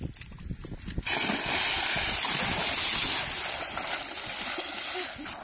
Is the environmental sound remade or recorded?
recorded